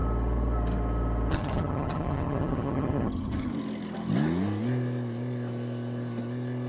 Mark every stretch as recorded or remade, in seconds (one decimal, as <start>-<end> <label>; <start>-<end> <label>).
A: 0.0-1.3 recorded; 1.3-3.5 remade; 3.5-6.7 recorded